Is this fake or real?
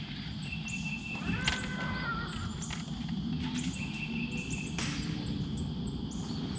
real